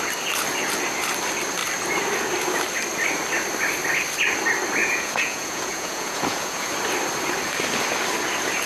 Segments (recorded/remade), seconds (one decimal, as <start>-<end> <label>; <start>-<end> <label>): 0.0-4.8 recorded; 4.8-6.7 remade; 6.7-8.7 recorded